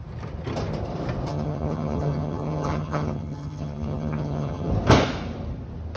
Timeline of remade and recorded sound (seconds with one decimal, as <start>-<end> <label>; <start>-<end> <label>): 0.0-1.3 recorded; 1.3-4.7 remade; 4.7-6.0 recorded